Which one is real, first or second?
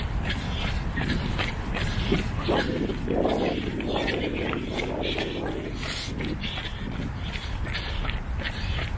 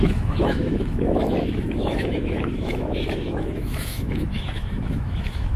first